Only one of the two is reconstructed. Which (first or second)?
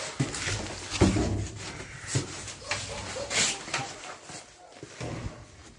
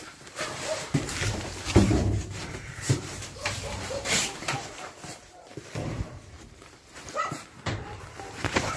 second